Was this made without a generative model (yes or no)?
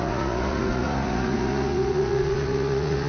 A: no